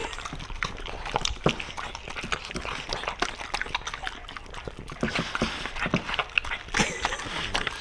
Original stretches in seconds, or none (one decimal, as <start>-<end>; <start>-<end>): 0.0-7.8